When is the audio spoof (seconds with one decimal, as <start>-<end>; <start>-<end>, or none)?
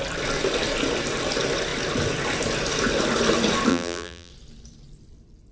3.7-4.3